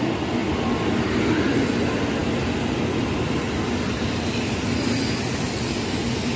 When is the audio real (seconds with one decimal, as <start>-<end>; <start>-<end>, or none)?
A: 0.0-6.4